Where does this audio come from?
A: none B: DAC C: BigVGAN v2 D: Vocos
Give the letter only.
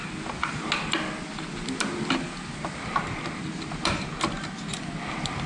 A